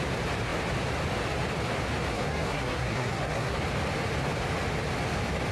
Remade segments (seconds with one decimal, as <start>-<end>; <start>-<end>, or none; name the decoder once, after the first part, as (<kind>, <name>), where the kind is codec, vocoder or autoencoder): 2.1-3.6 (codec, SNAC)